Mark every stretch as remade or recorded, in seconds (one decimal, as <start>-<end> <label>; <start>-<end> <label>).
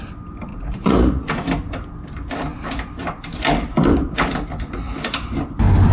0.0-0.5 recorded; 0.5-1.3 remade; 1.3-5.9 recorded